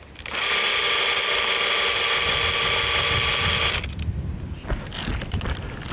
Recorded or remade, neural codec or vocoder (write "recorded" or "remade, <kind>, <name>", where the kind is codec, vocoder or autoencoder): recorded